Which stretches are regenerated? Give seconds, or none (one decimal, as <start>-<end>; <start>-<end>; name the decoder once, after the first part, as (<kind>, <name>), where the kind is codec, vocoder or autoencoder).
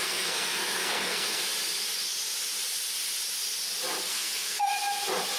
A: 0.0-1.4 (codec, SNAC); 4.1-4.7